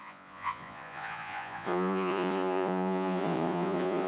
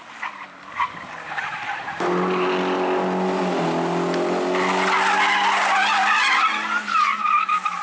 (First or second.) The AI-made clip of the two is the first